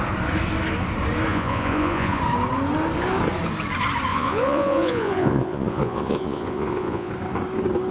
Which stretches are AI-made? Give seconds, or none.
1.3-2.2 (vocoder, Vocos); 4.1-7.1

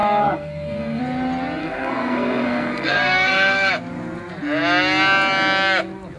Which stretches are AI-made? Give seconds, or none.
0.0-1.0 (codec, SNAC); 1.6-3.7

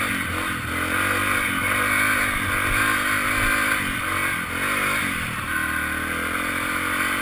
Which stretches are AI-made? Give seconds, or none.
none

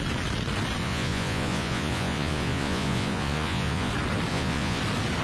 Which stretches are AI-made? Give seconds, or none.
0.8-3.9 (vocoder, Vocos); 4.3-4.8

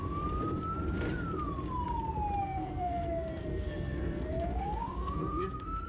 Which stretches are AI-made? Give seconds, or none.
2.4-5.9 (codec, SNAC)